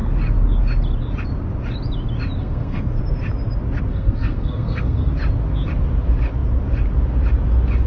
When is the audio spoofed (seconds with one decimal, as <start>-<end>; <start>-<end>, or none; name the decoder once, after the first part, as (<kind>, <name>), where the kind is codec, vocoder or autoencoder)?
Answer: 2.4-3.0 (codec, SNAC); 3.9-5.1